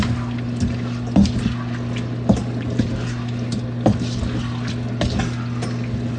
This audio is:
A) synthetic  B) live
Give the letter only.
B